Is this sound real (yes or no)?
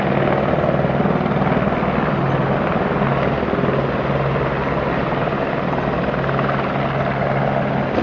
yes